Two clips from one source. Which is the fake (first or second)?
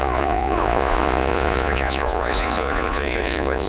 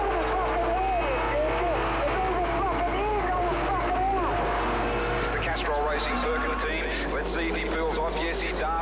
first